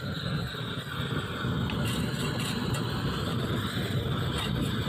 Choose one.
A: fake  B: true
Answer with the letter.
B